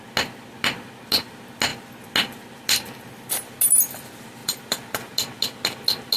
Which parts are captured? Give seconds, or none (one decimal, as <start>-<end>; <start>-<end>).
0.0-4.4; 5.1-6.2